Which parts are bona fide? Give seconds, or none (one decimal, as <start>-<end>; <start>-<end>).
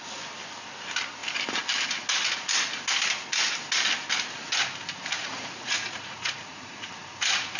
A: 0.0-5.1; 6.9-7.6